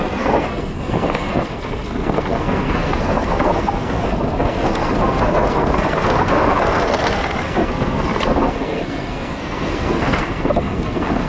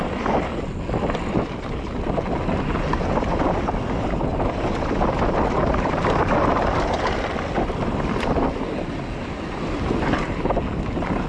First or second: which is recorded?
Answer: second